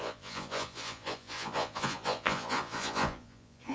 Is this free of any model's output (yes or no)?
no